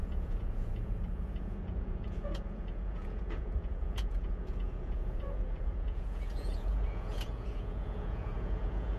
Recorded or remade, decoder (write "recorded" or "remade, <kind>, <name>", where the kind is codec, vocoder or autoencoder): remade, vocoder, Vocos